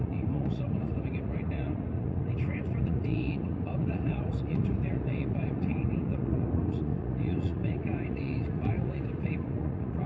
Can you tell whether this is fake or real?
fake